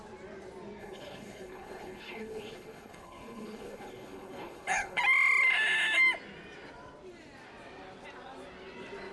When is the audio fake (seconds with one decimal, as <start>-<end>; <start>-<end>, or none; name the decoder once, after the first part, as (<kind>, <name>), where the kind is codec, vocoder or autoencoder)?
0.8-5.0 (codec, HILCodec)